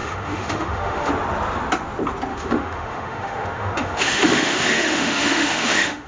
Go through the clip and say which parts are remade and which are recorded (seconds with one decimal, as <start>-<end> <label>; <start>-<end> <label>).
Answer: 0.0-1.1 remade; 1.1-2.3 recorded; 2.3-6.1 remade